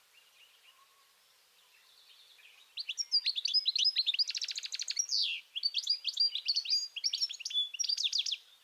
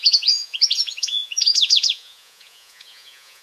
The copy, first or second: second